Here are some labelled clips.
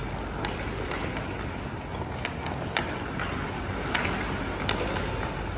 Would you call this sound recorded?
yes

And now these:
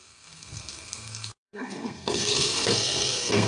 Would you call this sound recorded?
no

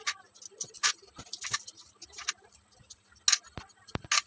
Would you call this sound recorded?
yes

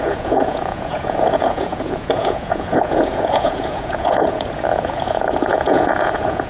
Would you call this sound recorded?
no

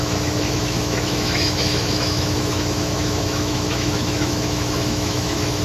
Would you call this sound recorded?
no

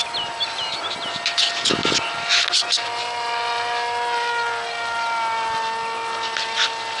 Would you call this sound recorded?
yes